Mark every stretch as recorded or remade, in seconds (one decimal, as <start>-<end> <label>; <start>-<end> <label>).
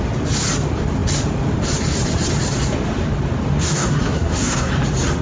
0.0-3.6 recorded; 3.6-4.7 remade; 4.7-5.2 recorded